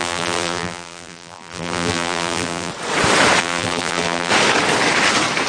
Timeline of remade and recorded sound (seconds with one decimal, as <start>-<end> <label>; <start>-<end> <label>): 0.0-2.7 remade; 2.7-3.4 recorded; 3.4-4.3 remade; 4.3-5.5 recorded